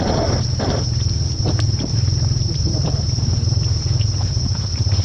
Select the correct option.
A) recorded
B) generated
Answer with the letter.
B